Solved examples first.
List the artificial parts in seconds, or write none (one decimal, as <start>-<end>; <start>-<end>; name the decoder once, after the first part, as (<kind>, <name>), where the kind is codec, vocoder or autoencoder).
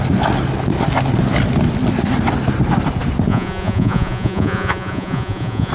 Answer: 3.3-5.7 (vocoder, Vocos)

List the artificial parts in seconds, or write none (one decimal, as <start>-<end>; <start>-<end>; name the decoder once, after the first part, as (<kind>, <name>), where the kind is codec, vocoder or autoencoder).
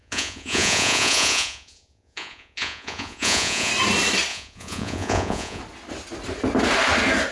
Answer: 0.0-3.7 (vocoder, Vocos); 4.3-5.6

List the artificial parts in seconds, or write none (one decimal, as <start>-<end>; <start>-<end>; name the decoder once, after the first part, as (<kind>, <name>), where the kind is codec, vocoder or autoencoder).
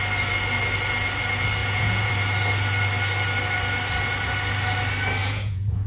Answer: 1.6-2.1 (vocoder, Vocos); 5.2-5.9